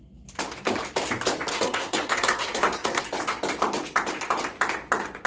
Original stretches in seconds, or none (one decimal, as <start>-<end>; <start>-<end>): 0.0-1.5; 3.0-5.3